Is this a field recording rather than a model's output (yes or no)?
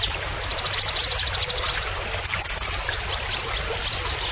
yes